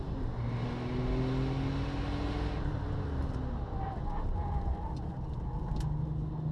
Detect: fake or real real